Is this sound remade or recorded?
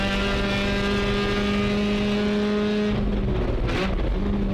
recorded